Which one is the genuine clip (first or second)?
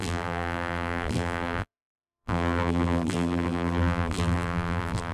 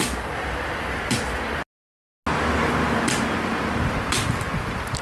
second